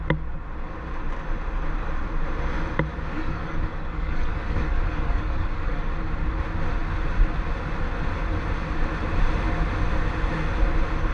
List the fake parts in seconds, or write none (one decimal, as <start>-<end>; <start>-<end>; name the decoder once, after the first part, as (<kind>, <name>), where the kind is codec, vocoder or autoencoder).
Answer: 2.9-5.9 (codec, DAC)